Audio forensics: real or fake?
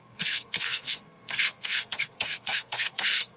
fake